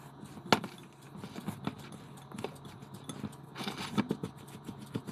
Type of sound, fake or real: real